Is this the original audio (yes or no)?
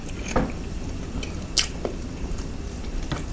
yes